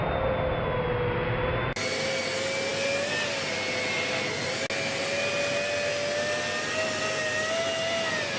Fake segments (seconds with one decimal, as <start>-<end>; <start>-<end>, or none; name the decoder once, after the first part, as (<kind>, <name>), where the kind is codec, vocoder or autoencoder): none